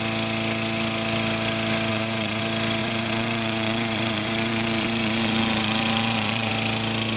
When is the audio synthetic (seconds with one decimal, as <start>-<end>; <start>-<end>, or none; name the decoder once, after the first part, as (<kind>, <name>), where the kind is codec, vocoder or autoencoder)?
1.9-2.4 (vocoder, Vocos); 2.8-6.5